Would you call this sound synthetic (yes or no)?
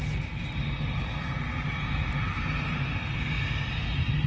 no